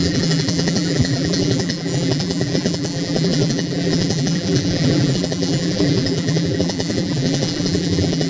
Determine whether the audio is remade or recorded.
remade